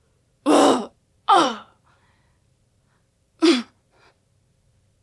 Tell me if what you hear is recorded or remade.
remade